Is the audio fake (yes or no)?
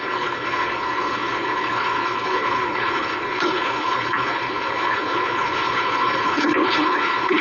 yes